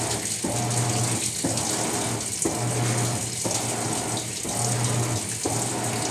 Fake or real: real